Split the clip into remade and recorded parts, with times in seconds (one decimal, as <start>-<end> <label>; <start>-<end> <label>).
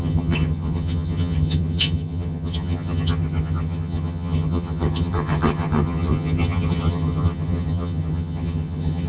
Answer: 0.0-9.1 remade